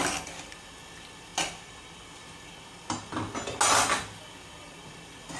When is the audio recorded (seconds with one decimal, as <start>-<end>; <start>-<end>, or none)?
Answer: 0.0-5.4